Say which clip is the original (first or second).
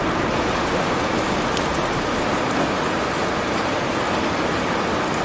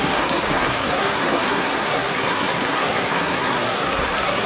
first